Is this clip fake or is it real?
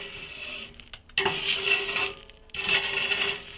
real